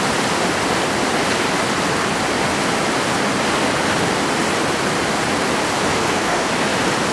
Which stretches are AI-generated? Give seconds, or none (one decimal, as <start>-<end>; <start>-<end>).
5.9-6.5